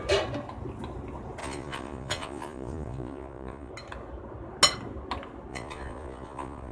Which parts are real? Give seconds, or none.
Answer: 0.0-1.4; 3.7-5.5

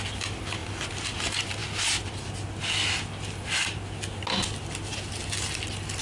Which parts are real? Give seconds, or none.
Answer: 0.0-6.0

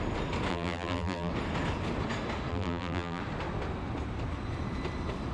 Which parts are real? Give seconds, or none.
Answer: 0.0-0.5; 1.3-2.5; 3.2-5.3

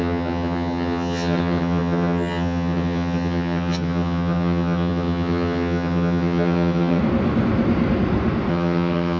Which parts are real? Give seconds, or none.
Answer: 7.0-8.5

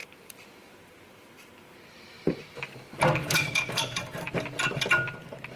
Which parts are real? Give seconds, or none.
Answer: 2.6-3.2; 4.3-5.6